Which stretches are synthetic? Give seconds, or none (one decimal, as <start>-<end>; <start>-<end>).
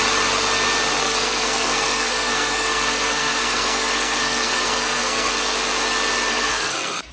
1.0-5.3; 6.3-7.1